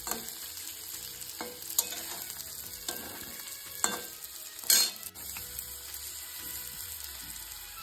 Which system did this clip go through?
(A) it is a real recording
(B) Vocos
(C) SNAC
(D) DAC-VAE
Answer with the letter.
A